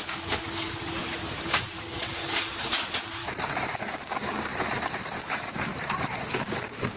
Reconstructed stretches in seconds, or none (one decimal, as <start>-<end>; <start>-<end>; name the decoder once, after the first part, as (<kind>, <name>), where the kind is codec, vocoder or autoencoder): 0.0-3.2 (codec, DAC); 3.8-4.5; 5.2-5.7; 6.3-7.0